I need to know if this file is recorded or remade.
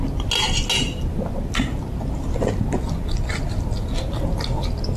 recorded